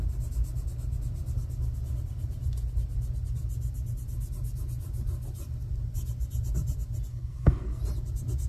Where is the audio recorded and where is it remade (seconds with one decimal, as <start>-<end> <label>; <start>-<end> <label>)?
0.0-7.1 recorded; 7.1-7.8 remade; 7.8-8.5 recorded

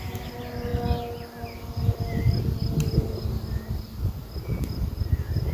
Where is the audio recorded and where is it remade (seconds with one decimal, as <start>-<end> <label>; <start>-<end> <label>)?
0.0-5.5 recorded

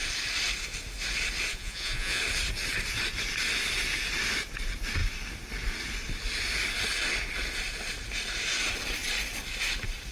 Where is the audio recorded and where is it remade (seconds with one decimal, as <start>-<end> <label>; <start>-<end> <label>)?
0.0-1.5 recorded; 1.5-2.2 remade; 2.2-10.1 recorded